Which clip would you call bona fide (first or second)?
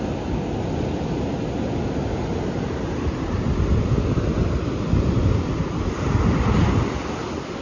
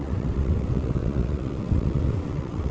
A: first